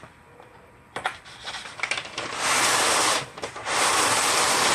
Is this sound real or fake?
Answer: real